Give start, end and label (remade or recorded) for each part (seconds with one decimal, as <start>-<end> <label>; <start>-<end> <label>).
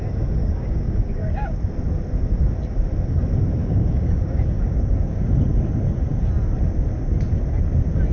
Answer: 0.0-0.4 recorded; 0.4-1.6 remade; 1.6-3.6 recorded; 3.6-5.2 remade; 5.2-8.1 recorded